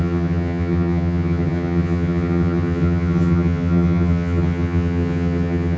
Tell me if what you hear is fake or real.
fake